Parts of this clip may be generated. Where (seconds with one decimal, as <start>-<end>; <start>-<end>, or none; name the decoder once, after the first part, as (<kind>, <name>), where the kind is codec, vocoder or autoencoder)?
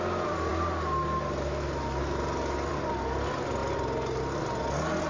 none